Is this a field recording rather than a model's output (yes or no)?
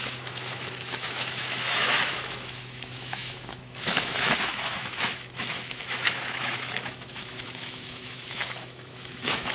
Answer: no